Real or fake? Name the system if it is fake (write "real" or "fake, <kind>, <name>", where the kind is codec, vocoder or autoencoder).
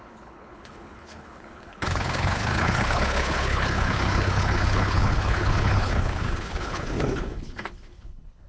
fake, codec, HILCodec